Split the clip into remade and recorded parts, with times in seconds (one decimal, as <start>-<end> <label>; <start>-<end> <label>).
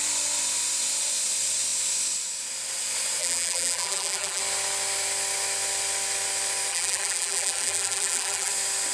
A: 0.0-3.2 recorded; 3.2-4.4 remade; 4.4-6.7 recorded; 6.7-8.5 remade; 8.5-8.9 recorded